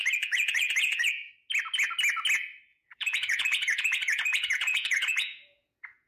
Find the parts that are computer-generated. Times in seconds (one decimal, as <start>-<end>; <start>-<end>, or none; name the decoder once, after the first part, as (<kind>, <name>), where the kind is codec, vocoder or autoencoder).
0.0-1.3 (vocoder, Vocos); 2.7-6.1